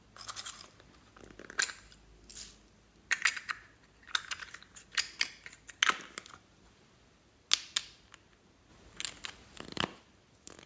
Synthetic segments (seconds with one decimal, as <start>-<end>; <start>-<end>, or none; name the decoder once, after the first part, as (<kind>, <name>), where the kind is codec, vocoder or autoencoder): none

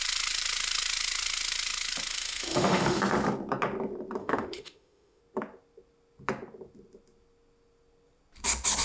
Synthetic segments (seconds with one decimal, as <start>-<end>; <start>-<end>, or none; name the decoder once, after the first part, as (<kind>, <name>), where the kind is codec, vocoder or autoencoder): 2.1-3.0 (autoencoder, DAC-VAE); 4.2-5.2

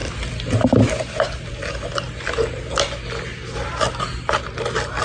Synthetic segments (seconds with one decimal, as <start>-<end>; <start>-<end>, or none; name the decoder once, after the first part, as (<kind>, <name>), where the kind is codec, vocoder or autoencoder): none

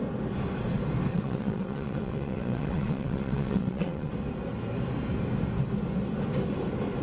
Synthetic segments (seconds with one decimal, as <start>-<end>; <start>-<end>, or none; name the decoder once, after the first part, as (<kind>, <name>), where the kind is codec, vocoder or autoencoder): 1.1-4.1 (vocoder, WaveNeXt)

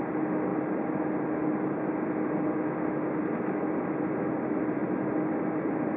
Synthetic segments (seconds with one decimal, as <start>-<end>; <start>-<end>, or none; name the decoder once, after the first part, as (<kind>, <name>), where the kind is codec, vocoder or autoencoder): none

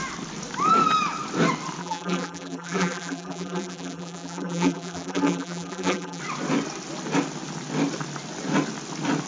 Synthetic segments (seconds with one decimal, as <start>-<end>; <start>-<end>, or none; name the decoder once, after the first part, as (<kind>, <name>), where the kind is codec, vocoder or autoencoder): 1.8-6.2 (vocoder, BigVGAN v2)

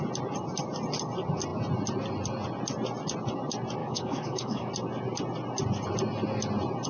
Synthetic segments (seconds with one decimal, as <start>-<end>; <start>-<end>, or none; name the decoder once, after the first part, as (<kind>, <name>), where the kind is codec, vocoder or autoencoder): 3.8-4.7 (autoencoder, DAC-VAE)

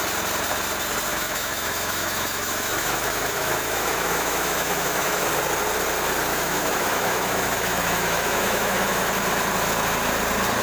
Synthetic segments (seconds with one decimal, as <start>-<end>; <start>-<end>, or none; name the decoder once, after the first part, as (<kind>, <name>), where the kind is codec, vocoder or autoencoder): 1.1-5.3 (autoencoder, DAC-VAE); 6.3-9.1